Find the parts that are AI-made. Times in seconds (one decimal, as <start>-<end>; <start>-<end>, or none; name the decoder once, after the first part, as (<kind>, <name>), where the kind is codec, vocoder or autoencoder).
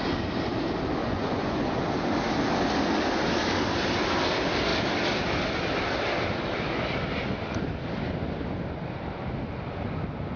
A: 1.0-1.8 (vocoder, Vocos)